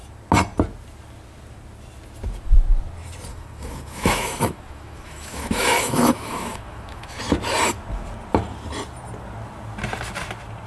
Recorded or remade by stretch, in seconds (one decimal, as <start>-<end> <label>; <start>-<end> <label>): 0.0-3.3 recorded; 3.3-7.2 remade; 7.2-10.7 recorded